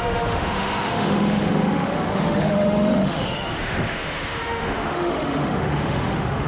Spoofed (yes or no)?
yes